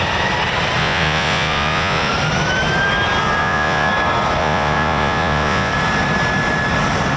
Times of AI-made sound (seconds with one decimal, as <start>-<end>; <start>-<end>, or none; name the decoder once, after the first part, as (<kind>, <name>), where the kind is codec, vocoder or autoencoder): 0.8-2.1 (vocoder, Vocos); 3.4-3.9; 4.4-5.7